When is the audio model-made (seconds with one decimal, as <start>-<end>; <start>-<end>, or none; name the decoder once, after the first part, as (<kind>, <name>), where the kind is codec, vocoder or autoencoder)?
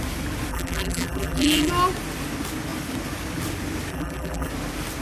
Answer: 0.5-1.7 (vocoder, BigVGAN v2); 3.9-4.5